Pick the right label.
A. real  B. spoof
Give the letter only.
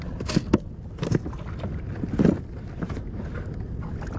A